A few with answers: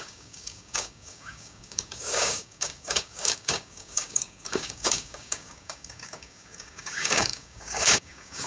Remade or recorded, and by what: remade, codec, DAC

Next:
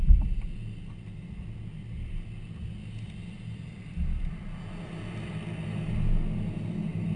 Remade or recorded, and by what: recorded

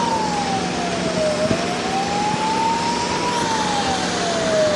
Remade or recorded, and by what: recorded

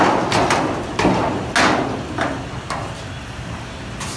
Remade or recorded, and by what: recorded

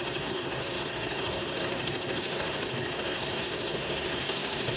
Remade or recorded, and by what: remade, codec, SNAC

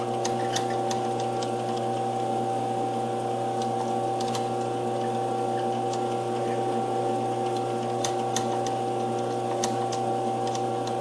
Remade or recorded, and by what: recorded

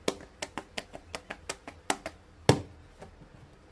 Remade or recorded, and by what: recorded